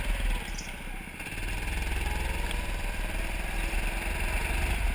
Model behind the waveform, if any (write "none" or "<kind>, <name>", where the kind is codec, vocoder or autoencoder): none